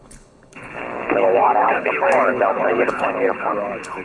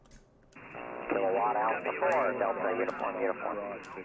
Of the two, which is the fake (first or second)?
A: first